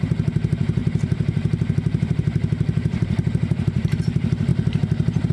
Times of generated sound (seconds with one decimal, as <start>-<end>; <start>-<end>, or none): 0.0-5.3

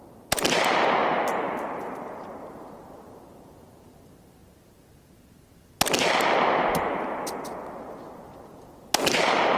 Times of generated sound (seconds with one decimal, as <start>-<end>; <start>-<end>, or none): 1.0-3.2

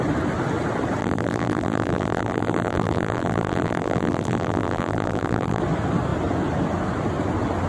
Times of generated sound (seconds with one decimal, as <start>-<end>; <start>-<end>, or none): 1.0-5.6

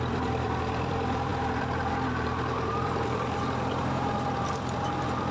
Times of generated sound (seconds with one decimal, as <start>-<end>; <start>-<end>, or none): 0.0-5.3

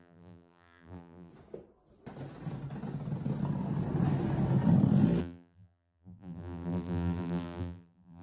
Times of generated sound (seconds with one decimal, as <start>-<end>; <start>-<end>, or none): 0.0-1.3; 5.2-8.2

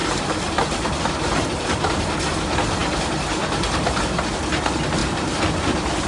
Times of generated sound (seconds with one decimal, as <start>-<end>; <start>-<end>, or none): 0.0-1.0; 5.0-6.1

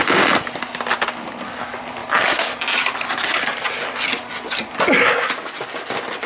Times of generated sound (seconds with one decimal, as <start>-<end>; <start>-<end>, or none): none

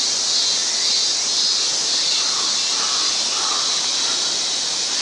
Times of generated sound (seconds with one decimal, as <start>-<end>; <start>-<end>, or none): none